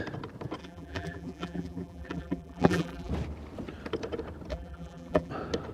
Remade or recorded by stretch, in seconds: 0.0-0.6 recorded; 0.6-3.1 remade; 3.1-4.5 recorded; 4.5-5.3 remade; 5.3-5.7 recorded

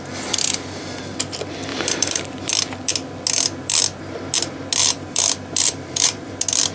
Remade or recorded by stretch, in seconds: 0.0-1.7 recorded; 1.7-2.5 remade; 2.5-4.8 recorded; 4.8-6.3 remade; 6.3-6.7 recorded

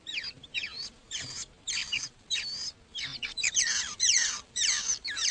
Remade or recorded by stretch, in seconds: 0.0-1.8 recorded; 1.8-2.3 remade; 2.3-3.1 recorded; 3.1-5.3 remade

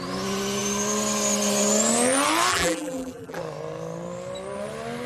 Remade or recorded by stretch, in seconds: 0.0-2.5 recorded; 2.5-3.4 remade; 3.4-5.1 recorded

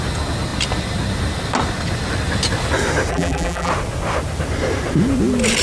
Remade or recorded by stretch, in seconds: 0.0-3.1 recorded; 3.1-3.7 remade; 3.7-5.6 recorded

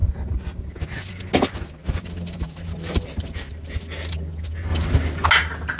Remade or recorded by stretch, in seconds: 0.0-1.8 recorded; 1.8-3.8 remade; 3.8-5.8 recorded

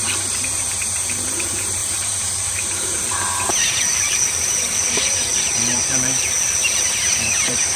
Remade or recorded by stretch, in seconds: 0.0-7.8 remade

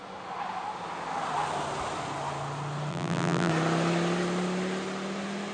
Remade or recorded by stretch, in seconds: 0.0-2.9 recorded; 2.9-3.5 remade; 3.5-5.5 recorded